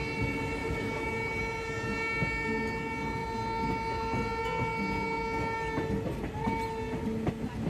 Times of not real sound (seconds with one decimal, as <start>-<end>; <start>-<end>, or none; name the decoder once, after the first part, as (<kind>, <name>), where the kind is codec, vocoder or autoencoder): 0.6-1.4 (autoencoder, DAC-VAE)